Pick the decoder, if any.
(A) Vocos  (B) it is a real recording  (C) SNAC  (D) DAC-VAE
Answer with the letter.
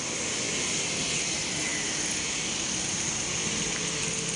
B